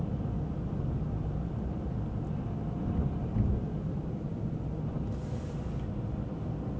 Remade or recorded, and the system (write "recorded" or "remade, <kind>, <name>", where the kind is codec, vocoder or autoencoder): recorded